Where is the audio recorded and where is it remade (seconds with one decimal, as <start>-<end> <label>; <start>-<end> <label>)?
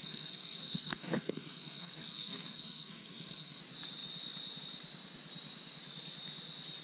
0.0-3.6 remade; 3.6-6.8 recorded